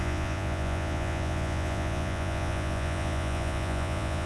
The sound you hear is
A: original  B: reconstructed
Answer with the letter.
B